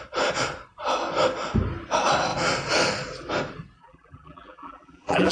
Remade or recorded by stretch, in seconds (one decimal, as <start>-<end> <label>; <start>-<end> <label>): 0.0-3.8 recorded; 3.8-5.3 remade

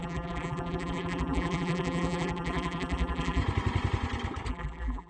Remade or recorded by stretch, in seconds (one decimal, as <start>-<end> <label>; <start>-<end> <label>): 0.0-3.4 remade; 3.4-4.5 recorded; 4.5-5.1 remade

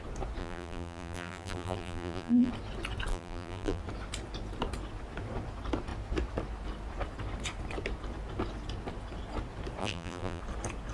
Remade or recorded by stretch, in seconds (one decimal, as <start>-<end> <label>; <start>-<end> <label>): 0.0-0.4 recorded; 0.4-2.5 remade; 2.5-3.1 recorded; 3.1-3.8 remade; 3.8-9.8 recorded; 9.8-10.4 remade; 10.4-10.9 recorded

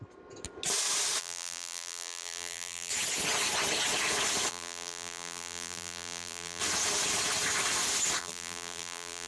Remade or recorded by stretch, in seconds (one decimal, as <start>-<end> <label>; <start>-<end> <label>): 0.0-1.2 recorded; 1.2-2.9 remade; 2.9-4.5 recorded; 4.5-6.6 remade; 6.6-8.2 recorded; 8.2-9.3 remade

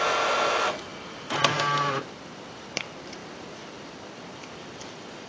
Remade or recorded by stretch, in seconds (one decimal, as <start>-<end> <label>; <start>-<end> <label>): 0.0-0.9 recorded; 0.9-1.5 remade; 1.5-3.2 recorded; 3.2-5.3 remade

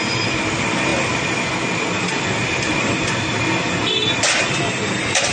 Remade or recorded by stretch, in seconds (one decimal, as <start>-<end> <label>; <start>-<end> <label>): 0.0-3.8 recorded; 3.8-4.6 remade; 4.6-5.3 recorded

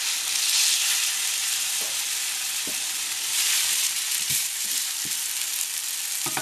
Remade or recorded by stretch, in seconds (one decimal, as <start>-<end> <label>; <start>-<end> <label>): 0.0-1.4 recorded; 1.4-4.9 remade; 4.9-6.4 recorded